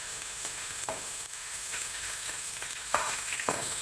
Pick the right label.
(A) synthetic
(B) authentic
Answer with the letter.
A